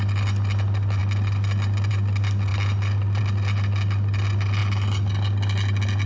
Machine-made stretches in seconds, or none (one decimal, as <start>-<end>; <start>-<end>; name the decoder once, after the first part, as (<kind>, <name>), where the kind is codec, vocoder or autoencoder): none